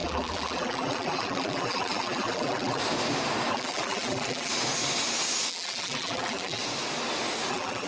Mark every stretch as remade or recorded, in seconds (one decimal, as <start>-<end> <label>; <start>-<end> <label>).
0.0-2.8 remade; 2.8-3.5 recorded; 3.5-4.5 remade; 4.5-5.5 recorded; 5.5-6.6 remade; 6.6-7.5 recorded; 7.5-7.9 remade